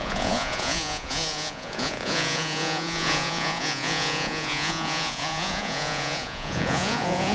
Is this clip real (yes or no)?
no